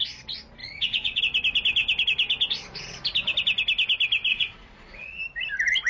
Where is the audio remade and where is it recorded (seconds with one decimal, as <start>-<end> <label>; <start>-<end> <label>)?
0.0-0.6 recorded; 0.6-1.2 remade; 1.2-4.3 recorded; 4.3-5.2 remade; 5.2-5.9 recorded